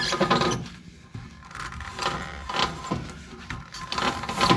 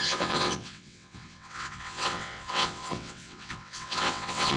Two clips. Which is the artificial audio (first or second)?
second